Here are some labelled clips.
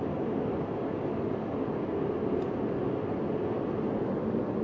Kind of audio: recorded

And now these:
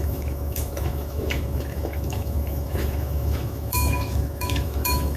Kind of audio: remade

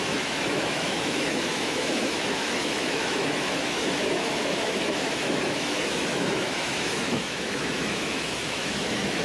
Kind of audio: remade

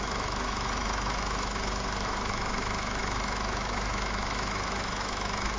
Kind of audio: remade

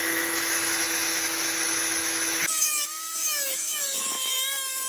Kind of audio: remade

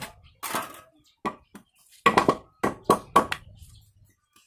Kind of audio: recorded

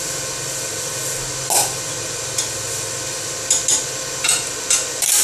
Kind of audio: recorded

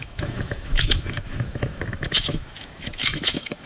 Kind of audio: remade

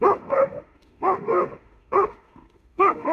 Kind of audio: remade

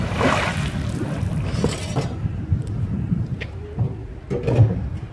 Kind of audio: recorded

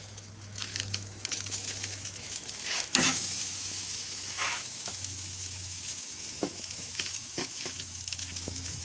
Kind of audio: remade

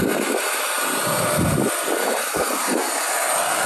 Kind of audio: recorded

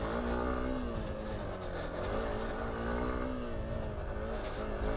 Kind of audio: recorded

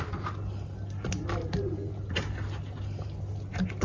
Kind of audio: recorded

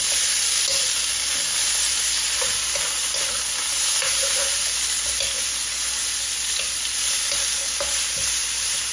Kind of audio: recorded